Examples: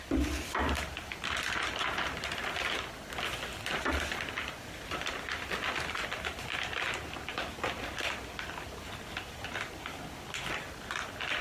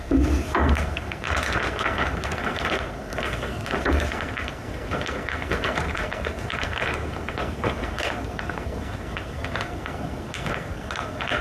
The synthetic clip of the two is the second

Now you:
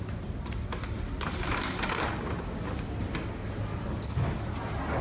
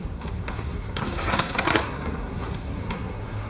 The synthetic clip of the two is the second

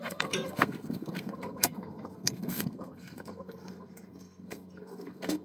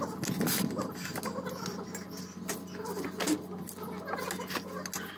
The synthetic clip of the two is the first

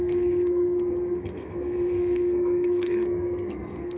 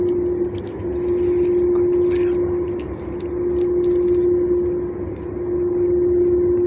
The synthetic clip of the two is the first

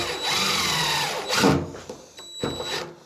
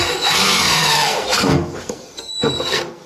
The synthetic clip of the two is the second